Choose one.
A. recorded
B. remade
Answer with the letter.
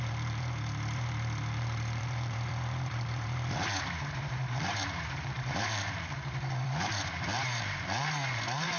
B